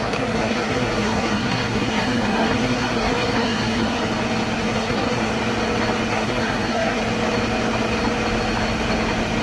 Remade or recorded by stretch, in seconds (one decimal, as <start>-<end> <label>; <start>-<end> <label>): 0.0-4.0 remade; 4.0-4.6 recorded; 4.6-5.3 remade; 5.3-6.1 recorded; 6.1-7.0 remade; 7.0-9.4 recorded